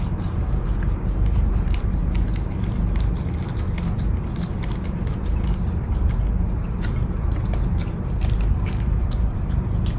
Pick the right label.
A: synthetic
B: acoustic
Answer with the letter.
A